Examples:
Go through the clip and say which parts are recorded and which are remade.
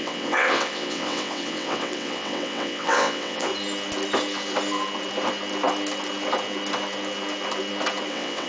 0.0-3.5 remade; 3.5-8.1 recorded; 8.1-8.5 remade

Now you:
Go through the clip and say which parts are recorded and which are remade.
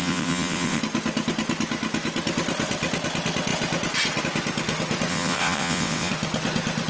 0.0-0.8 remade; 0.8-5.1 recorded; 5.1-6.1 remade; 6.1-6.9 recorded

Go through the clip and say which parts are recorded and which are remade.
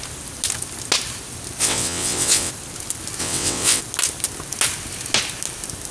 0.0-1.6 recorded; 1.6-2.5 remade; 2.5-3.2 recorded; 3.2-3.8 remade; 3.8-5.9 recorded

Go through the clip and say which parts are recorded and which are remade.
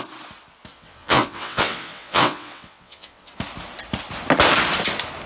0.0-0.7 recorded; 0.7-3.3 remade; 3.3-5.3 recorded